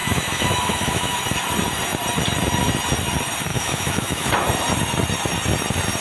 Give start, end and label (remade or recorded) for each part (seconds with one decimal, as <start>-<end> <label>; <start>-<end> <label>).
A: 0.0-1.2 remade; 1.2-3.5 recorded; 3.5-4.3 remade; 4.3-6.0 recorded